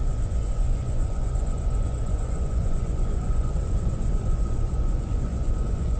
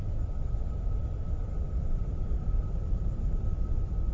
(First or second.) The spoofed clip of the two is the first